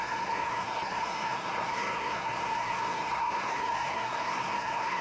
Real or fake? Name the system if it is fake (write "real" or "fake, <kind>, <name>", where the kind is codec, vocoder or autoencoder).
fake, codec, SNAC